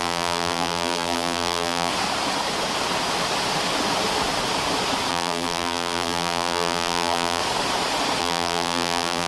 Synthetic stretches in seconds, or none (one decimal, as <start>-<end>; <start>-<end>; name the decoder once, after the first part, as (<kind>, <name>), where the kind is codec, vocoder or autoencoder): 0.0-1.9 (vocoder, BigVGAN v2); 5.1-7.4; 8.2-9.3

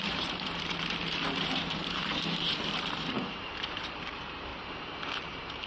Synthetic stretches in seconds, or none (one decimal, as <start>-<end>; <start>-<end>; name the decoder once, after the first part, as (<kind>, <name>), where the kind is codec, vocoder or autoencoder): 0.0-4.5 (vocoder, BigVGAN v2); 5.2-5.7

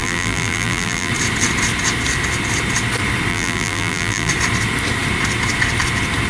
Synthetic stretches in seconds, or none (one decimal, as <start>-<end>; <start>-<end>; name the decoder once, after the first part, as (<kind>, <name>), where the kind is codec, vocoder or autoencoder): 0.0-1.1 (vocoder, BigVGAN v2); 3.3-4.3

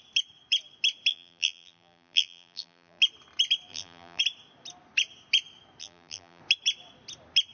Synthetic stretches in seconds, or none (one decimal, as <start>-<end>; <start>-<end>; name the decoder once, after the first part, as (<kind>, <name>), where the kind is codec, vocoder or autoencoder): 1.1-3.0 (vocoder, BigVGAN v2); 3.7-4.2; 5.8-6.4

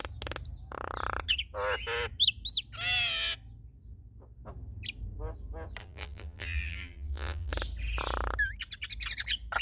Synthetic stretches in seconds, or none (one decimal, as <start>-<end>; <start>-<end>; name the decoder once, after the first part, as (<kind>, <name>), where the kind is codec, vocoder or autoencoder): 5.8-7.5 (vocoder, BigVGAN v2)

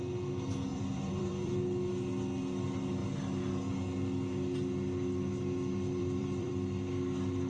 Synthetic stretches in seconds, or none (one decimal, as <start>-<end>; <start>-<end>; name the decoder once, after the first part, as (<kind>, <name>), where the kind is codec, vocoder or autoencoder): 0.7-1.5 (vocoder, BigVGAN v2); 6.0-6.5